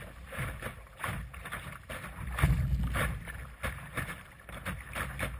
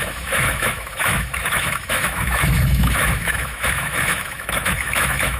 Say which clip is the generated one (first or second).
second